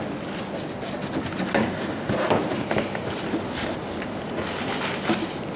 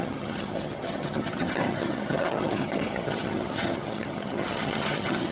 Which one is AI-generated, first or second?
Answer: second